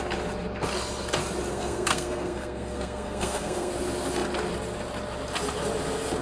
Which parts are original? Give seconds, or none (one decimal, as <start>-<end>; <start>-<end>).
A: 0.0-1.5; 3.7-6.2